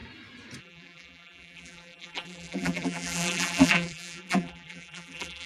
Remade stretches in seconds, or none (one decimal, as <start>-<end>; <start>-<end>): 0.6-5.5